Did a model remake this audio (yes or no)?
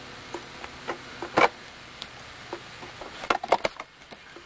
no